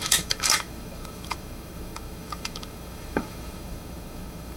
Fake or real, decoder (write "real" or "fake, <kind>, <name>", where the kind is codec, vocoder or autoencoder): fake, autoencoder, DAC-VAE